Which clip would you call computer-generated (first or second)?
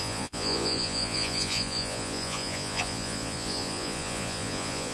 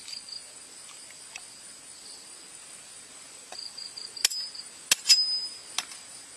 first